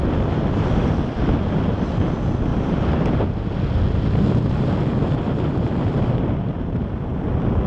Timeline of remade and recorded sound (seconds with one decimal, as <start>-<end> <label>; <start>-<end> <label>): 0.0-0.8 recorded; 0.8-1.7 remade; 1.7-4.9 recorded; 4.9-6.6 remade; 6.6-7.7 recorded